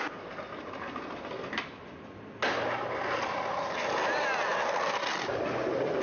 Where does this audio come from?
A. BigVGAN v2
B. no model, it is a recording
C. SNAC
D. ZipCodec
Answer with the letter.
B